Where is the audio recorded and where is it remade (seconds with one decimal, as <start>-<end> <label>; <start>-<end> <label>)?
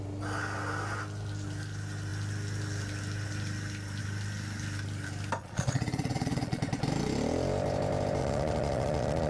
0.0-5.4 recorded; 5.4-6.6 remade; 6.6-8.2 recorded; 8.2-9.3 remade